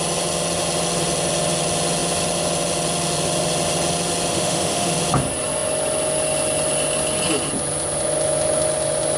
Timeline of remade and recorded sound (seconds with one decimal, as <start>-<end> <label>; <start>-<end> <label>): 0.0-4.3 recorded; 4.3-4.9 remade; 4.9-9.2 recorded